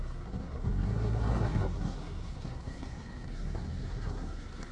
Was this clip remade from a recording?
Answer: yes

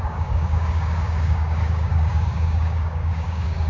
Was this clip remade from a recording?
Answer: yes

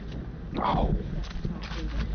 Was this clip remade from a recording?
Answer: no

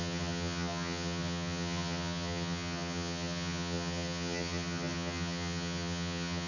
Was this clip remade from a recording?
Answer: yes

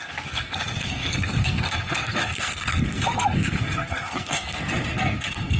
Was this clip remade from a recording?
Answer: yes